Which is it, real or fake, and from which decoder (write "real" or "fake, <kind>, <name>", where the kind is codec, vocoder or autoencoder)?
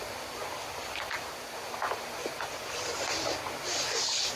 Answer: real